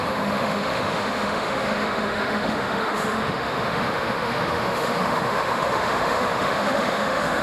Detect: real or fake fake